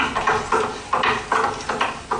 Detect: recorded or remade recorded